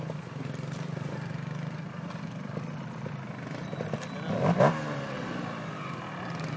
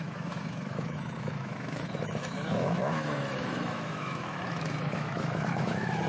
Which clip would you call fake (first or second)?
second